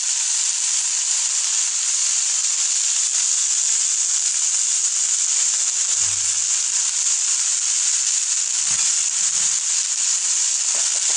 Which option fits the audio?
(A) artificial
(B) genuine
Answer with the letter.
B